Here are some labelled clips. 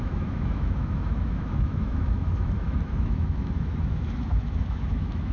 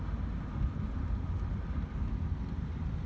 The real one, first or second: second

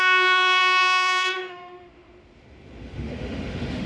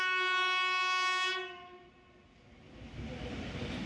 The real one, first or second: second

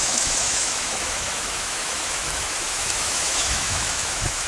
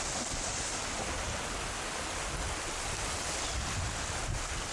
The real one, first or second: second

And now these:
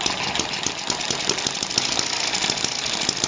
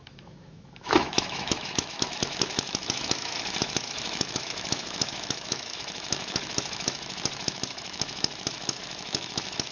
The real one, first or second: first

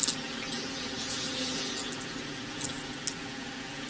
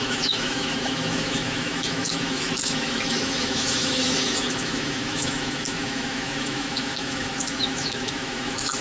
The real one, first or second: first